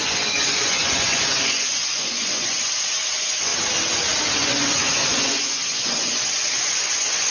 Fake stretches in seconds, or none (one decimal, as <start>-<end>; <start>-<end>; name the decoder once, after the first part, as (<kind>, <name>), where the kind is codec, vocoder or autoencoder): 0.0-3.5 (vocoder, Vocos); 4.3-7.3